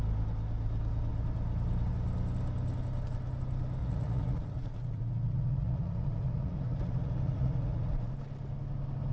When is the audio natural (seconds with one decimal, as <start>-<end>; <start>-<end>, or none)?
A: 0.0-3.8; 8.1-9.1